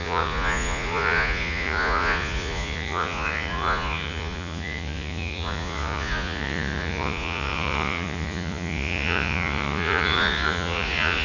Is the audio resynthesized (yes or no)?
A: yes